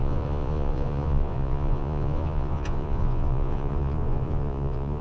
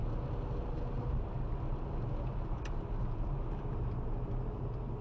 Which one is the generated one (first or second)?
first